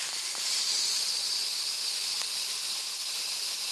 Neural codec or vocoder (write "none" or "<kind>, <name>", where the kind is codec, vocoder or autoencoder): none